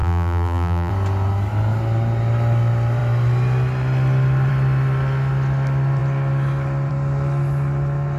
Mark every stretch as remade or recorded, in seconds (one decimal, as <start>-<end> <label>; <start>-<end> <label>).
0.0-0.9 remade; 0.9-8.2 recorded